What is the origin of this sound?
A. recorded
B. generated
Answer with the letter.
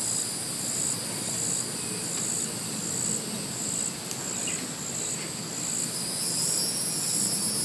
A